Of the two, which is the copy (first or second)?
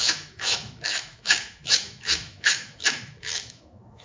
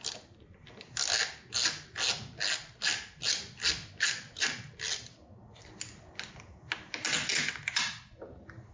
first